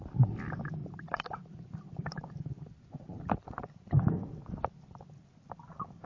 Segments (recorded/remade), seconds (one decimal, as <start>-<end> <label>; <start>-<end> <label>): 0.0-0.8 recorded; 0.8-3.7 remade; 3.7-6.1 recorded